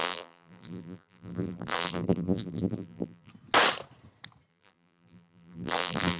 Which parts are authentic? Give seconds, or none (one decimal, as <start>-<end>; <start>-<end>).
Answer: 3.3-4.5